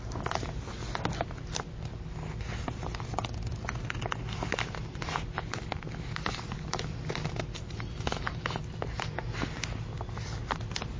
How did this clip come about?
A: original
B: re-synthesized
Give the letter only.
A